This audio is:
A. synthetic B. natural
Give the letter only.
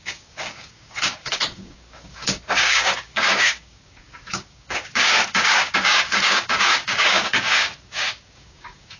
A